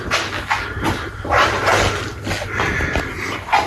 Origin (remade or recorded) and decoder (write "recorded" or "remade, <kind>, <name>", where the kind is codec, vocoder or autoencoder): recorded